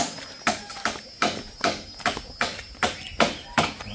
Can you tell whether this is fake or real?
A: real